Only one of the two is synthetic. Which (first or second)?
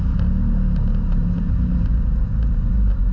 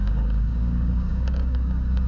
second